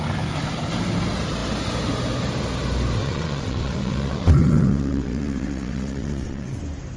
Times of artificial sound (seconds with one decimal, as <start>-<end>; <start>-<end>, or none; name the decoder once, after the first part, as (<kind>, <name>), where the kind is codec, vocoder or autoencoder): 3.0-6.6 (vocoder, WaveNeXt)